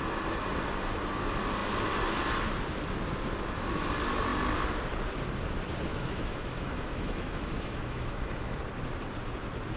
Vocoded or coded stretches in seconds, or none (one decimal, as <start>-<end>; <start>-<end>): 5.9-8.6